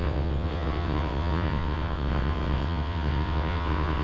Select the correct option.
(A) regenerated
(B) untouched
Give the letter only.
A